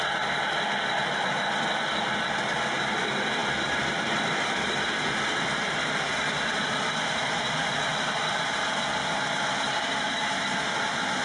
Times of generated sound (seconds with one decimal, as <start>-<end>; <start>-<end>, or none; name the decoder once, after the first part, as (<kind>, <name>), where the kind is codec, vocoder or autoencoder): 7.9-10.1 (vocoder, BigVGAN v2)